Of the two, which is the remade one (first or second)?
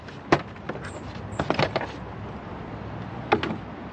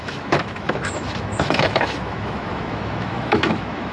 second